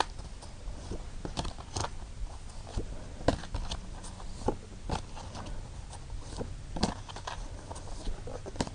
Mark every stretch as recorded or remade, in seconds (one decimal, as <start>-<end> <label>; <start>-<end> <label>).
0.0-8.7 recorded